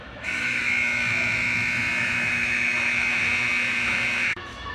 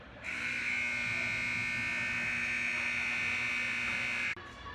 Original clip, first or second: second